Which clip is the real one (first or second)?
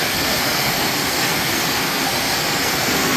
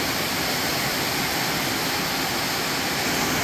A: second